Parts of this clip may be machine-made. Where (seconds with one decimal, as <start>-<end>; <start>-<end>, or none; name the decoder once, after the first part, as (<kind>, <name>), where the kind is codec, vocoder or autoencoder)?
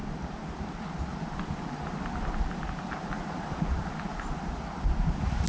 none